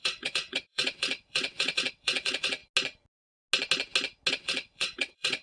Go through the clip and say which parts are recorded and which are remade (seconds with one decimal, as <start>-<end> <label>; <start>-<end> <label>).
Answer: 0.0-2.6 remade; 2.6-4.3 recorded; 4.3-5.4 remade